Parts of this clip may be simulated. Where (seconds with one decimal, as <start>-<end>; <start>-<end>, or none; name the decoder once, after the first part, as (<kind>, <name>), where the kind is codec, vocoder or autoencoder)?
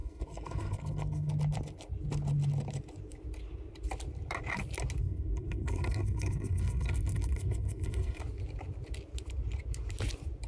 0.0-1.3 (codec, SNAC); 5.0-8.2